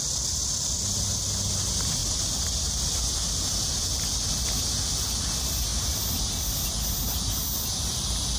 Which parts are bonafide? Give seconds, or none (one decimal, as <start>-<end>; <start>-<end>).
0.0-8.4